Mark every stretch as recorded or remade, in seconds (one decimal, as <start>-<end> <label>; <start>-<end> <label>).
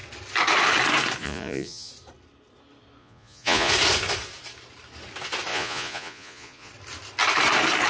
0.0-1.2 recorded; 1.2-1.9 remade; 1.9-3.0 recorded; 3.0-3.7 remade; 3.7-5.5 recorded; 5.5-6.7 remade; 6.7-7.9 recorded